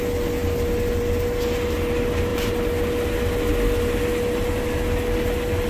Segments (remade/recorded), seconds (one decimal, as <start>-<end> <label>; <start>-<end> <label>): 0.0-5.7 recorded